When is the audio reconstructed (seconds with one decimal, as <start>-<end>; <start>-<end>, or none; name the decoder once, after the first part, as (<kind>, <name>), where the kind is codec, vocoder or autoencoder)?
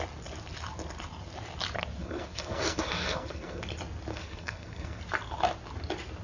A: 2.0-3.6 (codec, SNAC); 4.1-5.0